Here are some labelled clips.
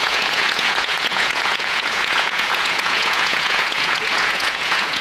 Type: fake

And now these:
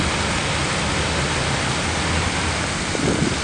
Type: real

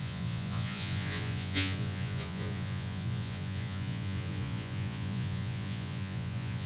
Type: fake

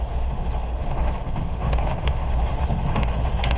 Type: fake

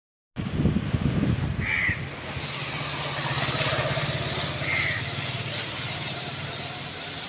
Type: real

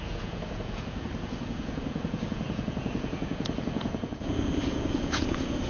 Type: fake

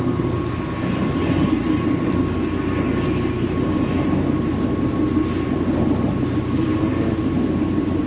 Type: real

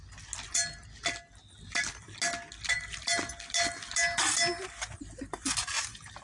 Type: real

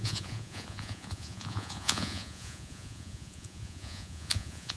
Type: fake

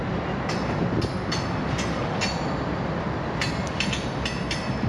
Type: real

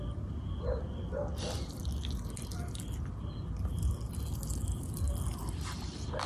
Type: real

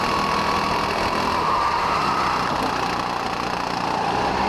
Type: real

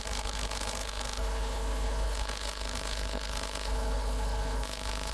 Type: fake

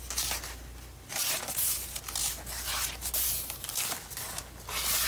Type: real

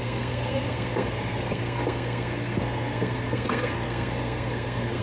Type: fake